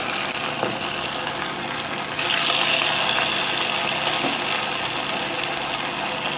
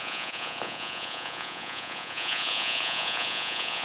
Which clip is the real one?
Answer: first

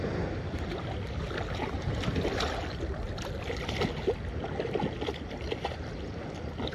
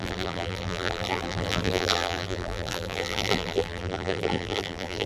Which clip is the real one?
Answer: first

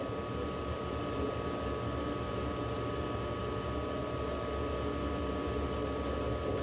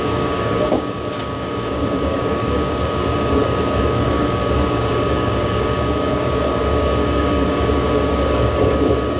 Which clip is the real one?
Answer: first